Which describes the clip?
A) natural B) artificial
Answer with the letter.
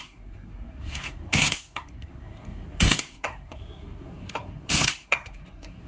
B